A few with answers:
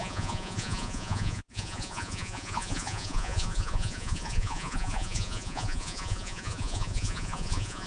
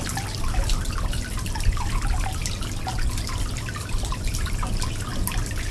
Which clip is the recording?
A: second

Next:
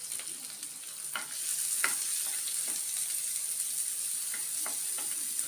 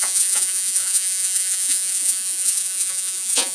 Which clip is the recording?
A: first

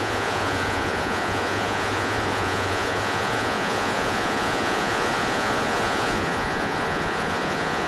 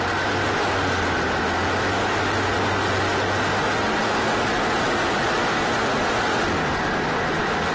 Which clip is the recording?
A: second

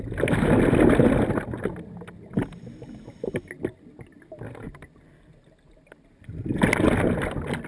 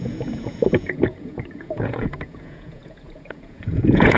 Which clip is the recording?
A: first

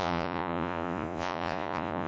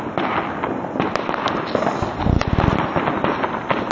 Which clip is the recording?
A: second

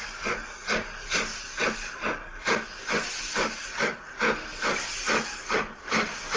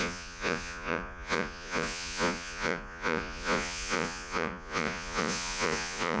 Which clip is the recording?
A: first